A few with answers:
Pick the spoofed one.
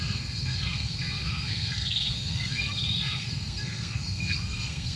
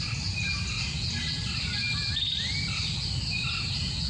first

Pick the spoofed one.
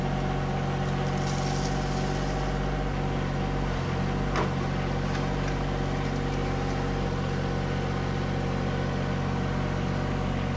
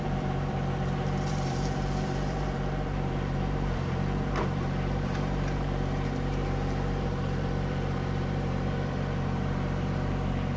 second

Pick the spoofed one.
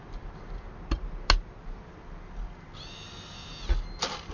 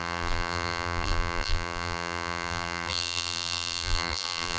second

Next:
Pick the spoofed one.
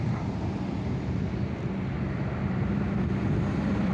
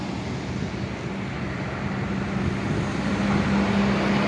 first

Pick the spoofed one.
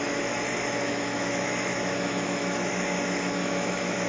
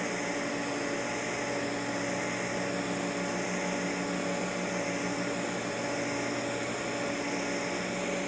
first